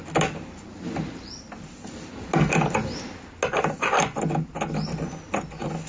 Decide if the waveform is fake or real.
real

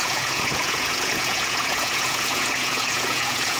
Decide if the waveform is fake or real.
fake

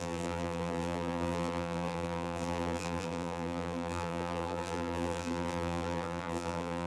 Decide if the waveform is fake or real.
fake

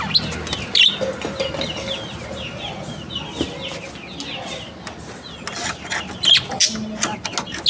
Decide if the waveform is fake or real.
real